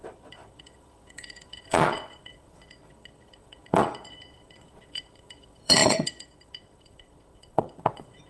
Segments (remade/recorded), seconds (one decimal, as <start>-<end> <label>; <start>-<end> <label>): 0.0-8.3 remade